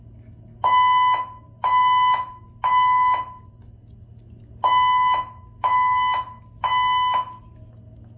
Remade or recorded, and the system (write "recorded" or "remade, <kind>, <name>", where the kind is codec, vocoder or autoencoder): recorded